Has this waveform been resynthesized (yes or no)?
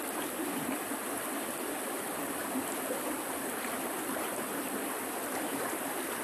no